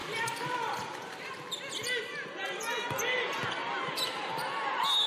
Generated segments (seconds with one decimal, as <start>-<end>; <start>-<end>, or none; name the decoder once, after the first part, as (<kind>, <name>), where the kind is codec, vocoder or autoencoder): 0.0-1.2 (vocoder, BigVGAN v2)